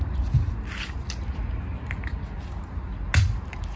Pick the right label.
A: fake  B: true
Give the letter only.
B